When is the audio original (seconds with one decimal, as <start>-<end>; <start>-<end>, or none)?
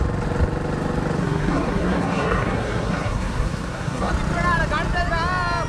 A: 0.0-1.2; 4.1-5.7